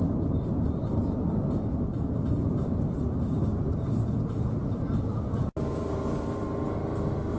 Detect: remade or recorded recorded